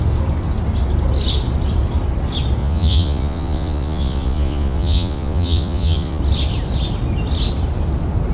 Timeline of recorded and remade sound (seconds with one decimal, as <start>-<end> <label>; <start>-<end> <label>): 0.0-2.6 recorded; 2.6-6.2 remade; 6.2-8.3 recorded